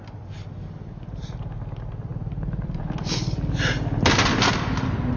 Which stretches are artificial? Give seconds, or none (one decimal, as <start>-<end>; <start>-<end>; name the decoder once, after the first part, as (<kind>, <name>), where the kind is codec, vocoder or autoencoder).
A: 2.1-2.8 (vocoder, BigVGAN v2)